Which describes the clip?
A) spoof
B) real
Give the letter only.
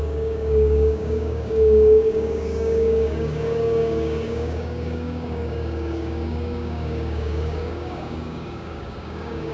A